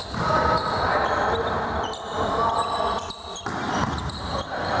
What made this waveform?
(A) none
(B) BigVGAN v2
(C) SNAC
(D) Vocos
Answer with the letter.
B